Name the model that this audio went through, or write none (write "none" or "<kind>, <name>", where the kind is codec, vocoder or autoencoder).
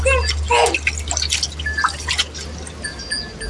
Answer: none